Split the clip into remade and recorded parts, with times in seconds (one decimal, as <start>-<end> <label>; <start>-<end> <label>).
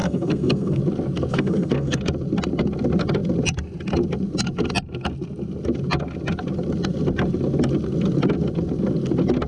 0.0-0.8 remade; 0.8-1.3 recorded; 1.3-2.0 remade; 2.0-9.5 recorded